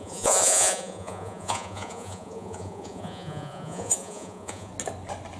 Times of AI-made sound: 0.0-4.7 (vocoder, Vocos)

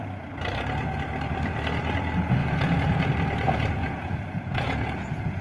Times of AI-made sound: 2.4-3.1 (vocoder, Vocos); 3.8-5.4

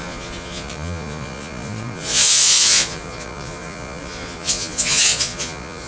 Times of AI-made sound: 0.0-5.9 (vocoder, Vocos)

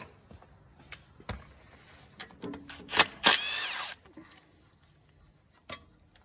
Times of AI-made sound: none

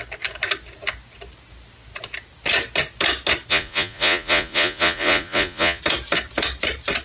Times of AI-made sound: 3.5-5.8 (vocoder, Vocos)

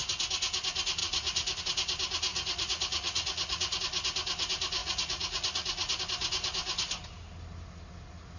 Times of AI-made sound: 1.0-1.6 (vocoder, Vocos); 2.3-3.8; 4.8-6.0

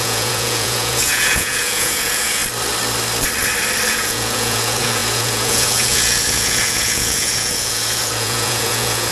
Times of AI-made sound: 0.0-2.4 (vocoder, Vocos); 3.9-9.1

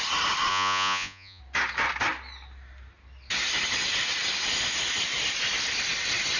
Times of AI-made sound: 0.5-1.4 (vocoder, Vocos)